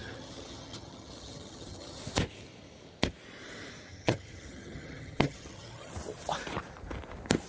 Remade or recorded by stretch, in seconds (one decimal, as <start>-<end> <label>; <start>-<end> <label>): 0.0-2.0 remade; 2.0-3.9 recorded; 3.9-5.9 remade; 5.9-7.5 recorded